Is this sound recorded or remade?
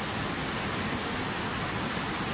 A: recorded